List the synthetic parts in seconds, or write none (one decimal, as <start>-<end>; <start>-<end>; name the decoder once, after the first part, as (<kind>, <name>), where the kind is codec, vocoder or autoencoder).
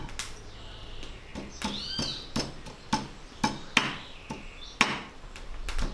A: none